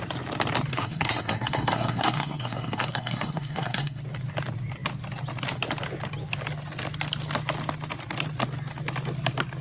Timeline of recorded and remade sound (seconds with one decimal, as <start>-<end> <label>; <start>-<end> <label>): 0.0-0.7 recorded; 0.7-4.0 remade; 4.0-9.6 recorded